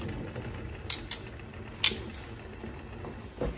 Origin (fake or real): real